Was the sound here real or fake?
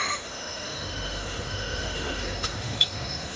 fake